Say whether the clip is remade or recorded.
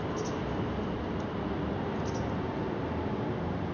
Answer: recorded